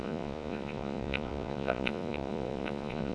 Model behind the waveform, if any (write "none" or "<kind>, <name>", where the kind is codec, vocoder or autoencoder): vocoder, Vocos